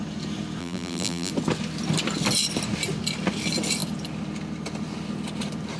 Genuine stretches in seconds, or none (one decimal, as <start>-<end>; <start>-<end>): 0.0-0.6; 1.3-5.8